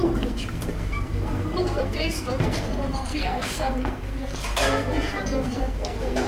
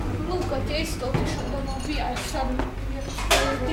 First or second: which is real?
second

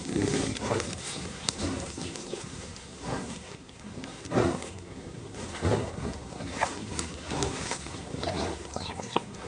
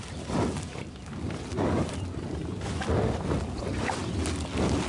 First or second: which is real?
second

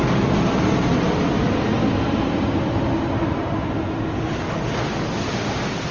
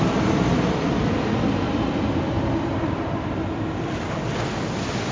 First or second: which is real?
first